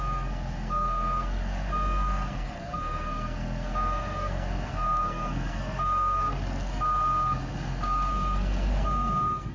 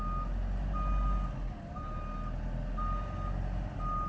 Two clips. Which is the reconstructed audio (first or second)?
first